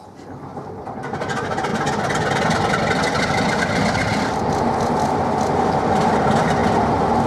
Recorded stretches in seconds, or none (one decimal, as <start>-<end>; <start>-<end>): 0.0-7.3